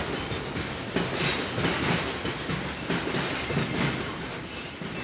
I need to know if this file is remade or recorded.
recorded